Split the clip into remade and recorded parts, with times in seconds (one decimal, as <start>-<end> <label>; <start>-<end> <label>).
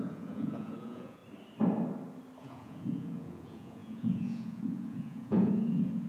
0.0-1.2 remade; 1.2-2.4 recorded; 2.4-6.1 remade